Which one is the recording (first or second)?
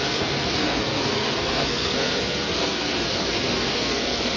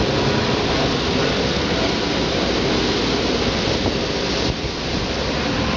second